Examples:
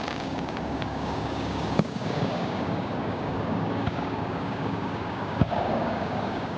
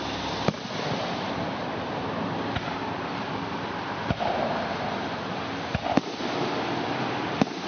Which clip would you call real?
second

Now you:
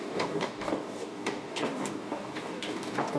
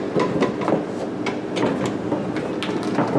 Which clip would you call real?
second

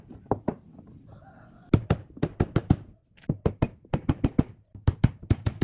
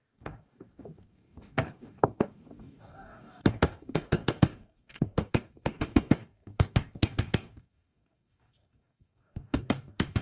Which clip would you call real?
first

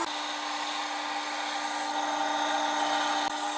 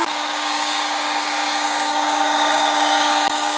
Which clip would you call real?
first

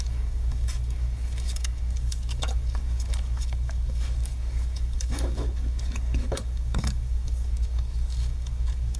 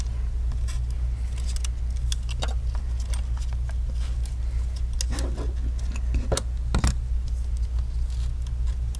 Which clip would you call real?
second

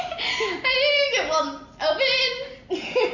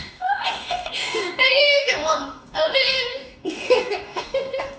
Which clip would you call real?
first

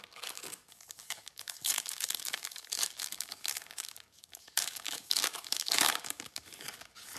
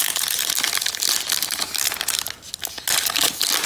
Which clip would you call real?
second